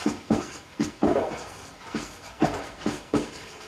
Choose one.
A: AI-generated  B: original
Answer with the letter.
A